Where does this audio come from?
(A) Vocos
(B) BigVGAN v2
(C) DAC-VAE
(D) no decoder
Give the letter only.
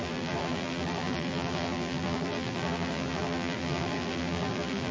B